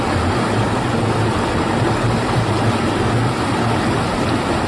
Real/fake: real